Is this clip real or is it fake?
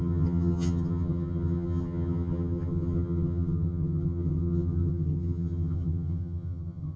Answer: fake